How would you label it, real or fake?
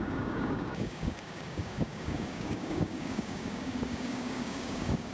fake